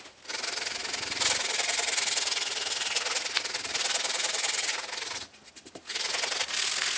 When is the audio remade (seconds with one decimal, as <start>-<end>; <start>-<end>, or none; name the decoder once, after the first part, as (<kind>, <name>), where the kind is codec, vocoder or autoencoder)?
none